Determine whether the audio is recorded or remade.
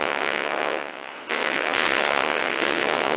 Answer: remade